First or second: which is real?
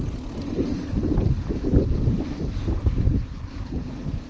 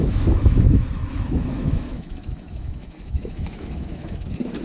first